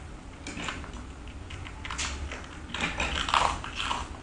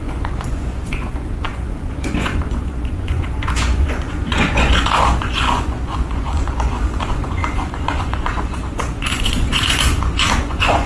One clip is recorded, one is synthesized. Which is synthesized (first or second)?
second